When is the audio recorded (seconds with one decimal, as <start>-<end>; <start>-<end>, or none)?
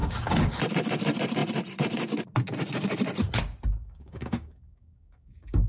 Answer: 0.6-3.8